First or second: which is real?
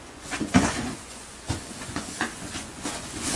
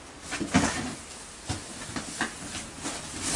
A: second